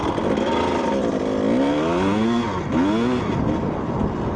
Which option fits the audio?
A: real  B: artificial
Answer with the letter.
A